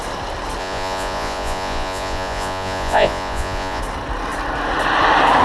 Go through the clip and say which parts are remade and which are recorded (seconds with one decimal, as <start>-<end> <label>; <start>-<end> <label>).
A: 0.0-0.6 recorded; 0.6-3.8 remade; 3.8-5.4 recorded